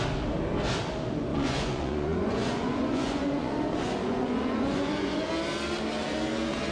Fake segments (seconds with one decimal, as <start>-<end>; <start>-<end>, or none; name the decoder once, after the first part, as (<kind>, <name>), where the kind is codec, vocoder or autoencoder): 1.3-5.3 (vocoder, Vocos)